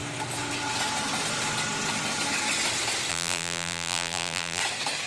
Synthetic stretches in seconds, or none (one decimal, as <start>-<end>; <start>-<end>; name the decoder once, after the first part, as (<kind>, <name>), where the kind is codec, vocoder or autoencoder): 3.1-4.6 (vocoder, BigVGAN v2)